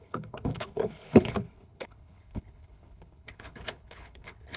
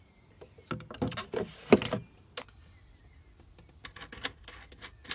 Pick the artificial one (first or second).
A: first